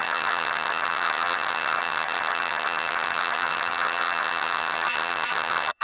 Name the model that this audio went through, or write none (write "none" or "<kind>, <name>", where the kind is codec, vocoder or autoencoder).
vocoder, HiFi-GAN